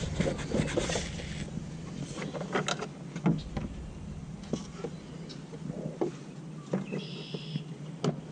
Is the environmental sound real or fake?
real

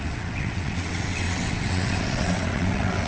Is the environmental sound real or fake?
fake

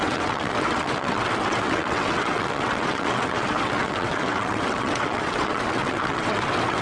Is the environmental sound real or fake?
fake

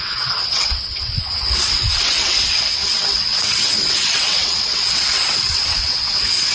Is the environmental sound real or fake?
fake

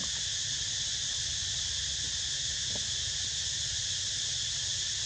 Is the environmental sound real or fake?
real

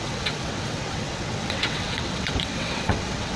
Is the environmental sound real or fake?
fake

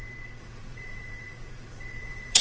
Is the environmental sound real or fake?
fake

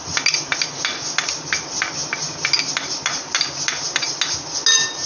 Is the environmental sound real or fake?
real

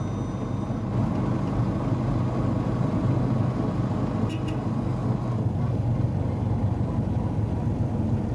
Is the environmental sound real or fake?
real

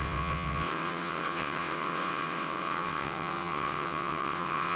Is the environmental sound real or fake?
fake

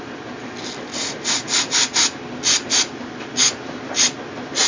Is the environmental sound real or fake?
real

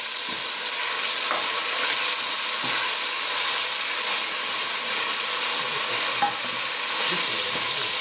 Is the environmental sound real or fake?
real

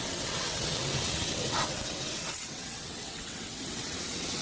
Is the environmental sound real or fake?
fake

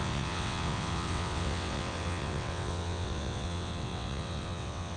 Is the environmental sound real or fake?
fake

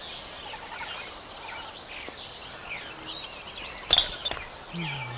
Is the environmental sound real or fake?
real